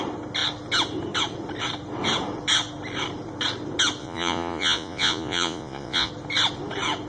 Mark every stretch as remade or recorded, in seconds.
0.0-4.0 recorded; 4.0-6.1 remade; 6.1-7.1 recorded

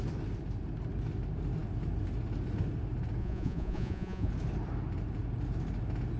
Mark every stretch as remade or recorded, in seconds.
0.0-3.2 recorded; 3.2-4.3 remade; 4.3-6.2 recorded

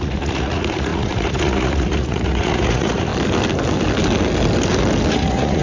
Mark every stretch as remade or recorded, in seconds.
0.0-3.1 remade; 3.1-5.1 recorded; 5.1-5.6 remade

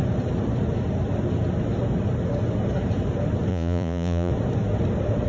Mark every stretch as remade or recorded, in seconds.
0.0-3.5 recorded; 3.5-4.3 remade; 4.3-5.3 recorded

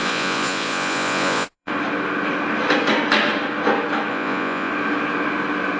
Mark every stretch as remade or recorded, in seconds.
0.0-1.7 remade; 1.7-4.1 recorded; 4.1-4.7 remade; 4.7-5.8 recorded

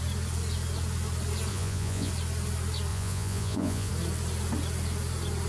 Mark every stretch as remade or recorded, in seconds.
0.0-1.5 recorded; 1.5-2.1 remade; 2.1-2.9 recorded; 2.9-3.9 remade; 3.9-5.5 recorded